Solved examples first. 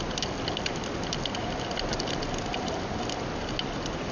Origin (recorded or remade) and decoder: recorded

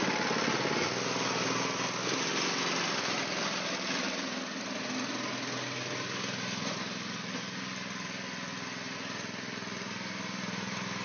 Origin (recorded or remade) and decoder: recorded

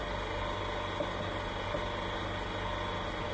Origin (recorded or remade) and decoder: recorded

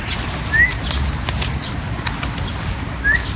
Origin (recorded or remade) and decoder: recorded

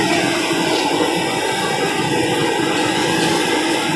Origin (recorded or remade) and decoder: remade, vocoder, Vocos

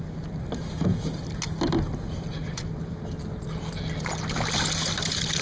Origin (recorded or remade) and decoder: recorded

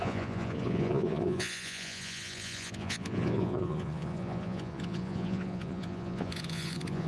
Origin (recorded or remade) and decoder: remade, vocoder, Vocos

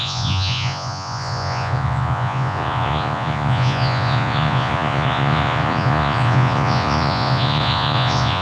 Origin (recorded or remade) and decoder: remade, vocoder, Vocos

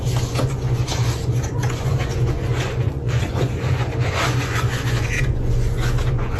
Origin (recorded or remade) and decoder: remade, vocoder, Vocos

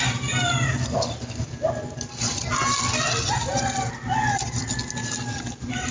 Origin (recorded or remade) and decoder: recorded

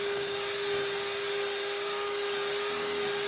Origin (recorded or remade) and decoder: recorded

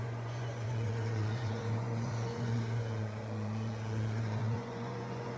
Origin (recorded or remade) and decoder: remade, vocoder, Vocos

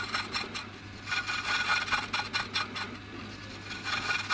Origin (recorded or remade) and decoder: recorded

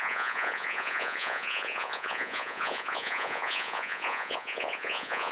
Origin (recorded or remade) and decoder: remade, vocoder, Vocos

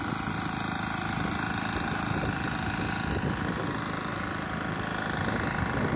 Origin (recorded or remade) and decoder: recorded